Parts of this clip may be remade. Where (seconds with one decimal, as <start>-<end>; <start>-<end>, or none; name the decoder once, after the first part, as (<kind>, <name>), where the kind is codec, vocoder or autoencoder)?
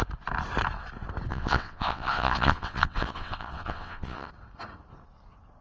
1.3-4.3 (vocoder, WaveNeXt)